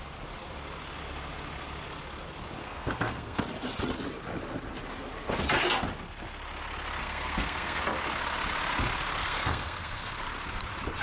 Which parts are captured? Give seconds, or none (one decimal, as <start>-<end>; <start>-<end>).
0.0-2.6; 3.4-7.0; 7.8-9.2; 10.1-11.0